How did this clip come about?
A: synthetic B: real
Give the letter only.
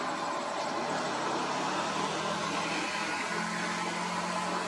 B